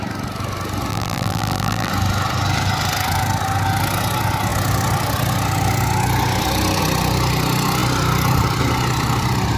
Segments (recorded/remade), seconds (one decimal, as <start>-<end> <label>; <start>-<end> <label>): 0.0-0.9 recorded; 0.9-1.9 remade; 1.9-9.6 recorded